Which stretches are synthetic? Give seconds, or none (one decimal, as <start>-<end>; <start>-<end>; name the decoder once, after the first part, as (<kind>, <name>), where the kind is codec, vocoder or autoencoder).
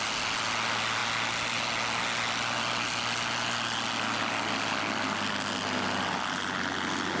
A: none